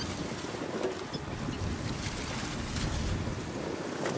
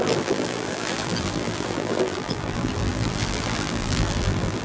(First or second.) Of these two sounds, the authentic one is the first